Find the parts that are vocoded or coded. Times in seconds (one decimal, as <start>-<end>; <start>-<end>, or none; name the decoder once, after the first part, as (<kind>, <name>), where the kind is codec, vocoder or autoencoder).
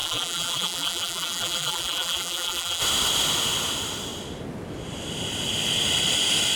0.0-2.8 (vocoder, BigVGAN v2)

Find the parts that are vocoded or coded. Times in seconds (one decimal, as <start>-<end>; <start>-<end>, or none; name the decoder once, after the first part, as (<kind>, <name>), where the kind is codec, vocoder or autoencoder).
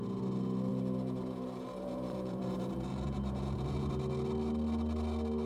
0.7-3.9 (vocoder, Vocos)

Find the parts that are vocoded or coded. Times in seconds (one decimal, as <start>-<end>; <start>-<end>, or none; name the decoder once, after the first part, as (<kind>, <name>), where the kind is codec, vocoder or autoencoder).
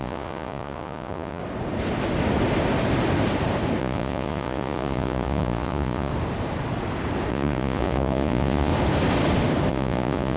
0.0-1.4 (vocoder, Vocos); 3.8-6.1; 7.3-8.7; 9.7-10.4